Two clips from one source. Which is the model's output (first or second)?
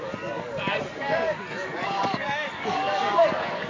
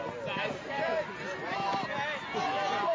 first